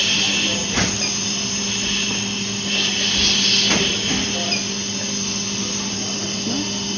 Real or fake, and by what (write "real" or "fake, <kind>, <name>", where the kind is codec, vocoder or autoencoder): real